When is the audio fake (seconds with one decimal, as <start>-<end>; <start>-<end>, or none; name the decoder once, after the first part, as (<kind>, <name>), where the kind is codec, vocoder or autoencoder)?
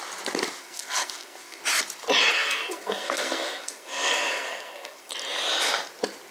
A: 0.6-1.6 (codec, SNAC); 2.3-5.1